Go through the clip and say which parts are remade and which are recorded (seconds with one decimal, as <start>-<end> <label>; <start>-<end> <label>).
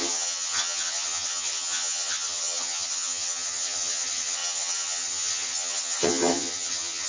0.0-7.1 remade